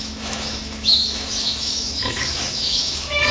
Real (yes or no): no